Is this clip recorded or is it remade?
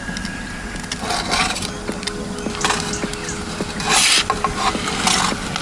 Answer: recorded